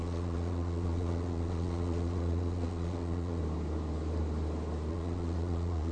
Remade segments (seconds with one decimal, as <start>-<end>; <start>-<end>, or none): 0.0-3.4; 4.9-5.9

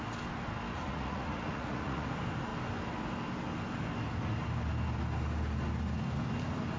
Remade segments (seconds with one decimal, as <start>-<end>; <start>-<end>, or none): 0.7-2.1

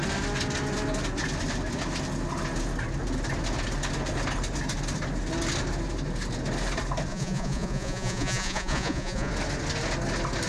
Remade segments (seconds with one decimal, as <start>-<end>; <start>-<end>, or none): 7.1-9.3

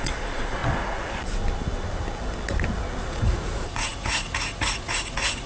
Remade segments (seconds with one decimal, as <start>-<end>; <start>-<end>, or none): 0.0-0.6; 3.0-5.5